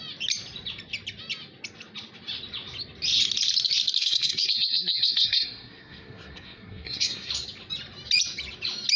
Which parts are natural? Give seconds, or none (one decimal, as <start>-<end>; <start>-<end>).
0.0-4.0; 7.3-9.0